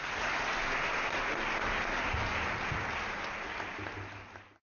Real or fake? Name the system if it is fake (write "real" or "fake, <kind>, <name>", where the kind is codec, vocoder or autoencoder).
real